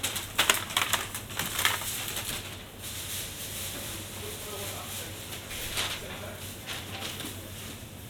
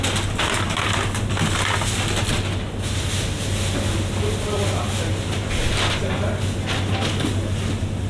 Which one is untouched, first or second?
second